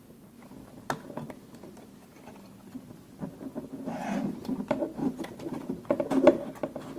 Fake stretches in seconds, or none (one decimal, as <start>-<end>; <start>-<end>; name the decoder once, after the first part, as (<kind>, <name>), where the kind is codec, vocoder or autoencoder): 5.0-5.7 (vocoder, BigVGAN v2)